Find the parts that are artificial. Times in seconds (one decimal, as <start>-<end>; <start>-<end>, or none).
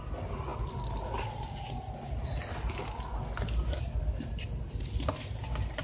none